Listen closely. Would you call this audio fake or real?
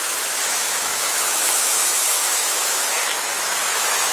fake